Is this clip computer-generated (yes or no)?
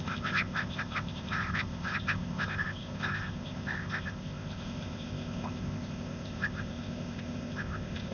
yes